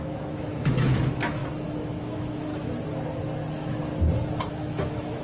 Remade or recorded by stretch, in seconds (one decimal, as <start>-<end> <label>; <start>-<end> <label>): 0.0-2.5 remade; 2.5-3.5 recorded; 3.5-3.9 remade; 3.9-4.5 recorded; 4.5-5.2 remade